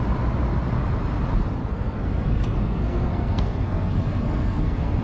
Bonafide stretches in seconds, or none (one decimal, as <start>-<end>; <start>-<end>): 0.0-1.7